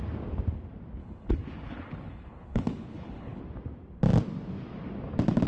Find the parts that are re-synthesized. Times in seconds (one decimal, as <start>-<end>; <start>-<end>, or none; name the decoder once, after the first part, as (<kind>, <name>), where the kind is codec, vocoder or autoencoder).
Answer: 1.0-3.4 (codec, HILCodec)